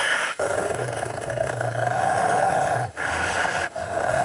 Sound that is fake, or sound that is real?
fake